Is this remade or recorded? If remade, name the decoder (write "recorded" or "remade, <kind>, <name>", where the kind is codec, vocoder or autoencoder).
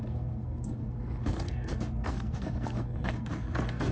remade, codec, SNAC